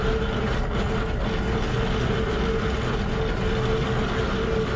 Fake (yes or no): no